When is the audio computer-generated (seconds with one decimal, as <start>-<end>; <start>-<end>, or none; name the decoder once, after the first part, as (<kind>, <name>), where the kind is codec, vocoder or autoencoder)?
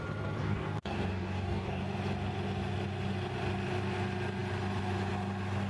0.4-1.8 (codec, DAC)